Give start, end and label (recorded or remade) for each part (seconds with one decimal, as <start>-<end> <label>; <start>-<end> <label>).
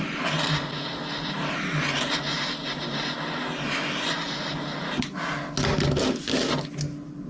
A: 0.0-7.3 recorded